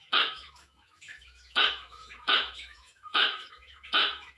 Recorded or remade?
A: remade